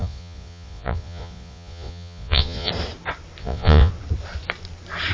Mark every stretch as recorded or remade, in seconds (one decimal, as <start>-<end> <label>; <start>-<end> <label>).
0.0-2.7 remade; 2.7-3.4 recorded; 3.4-3.9 remade; 3.9-5.1 recorded